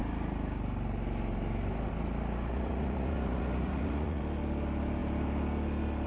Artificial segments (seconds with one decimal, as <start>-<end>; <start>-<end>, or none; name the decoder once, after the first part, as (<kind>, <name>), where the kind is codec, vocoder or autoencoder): 2.5-4.2 (vocoder, Vocos)